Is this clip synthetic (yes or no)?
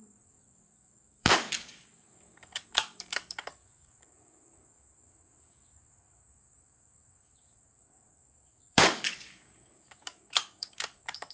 yes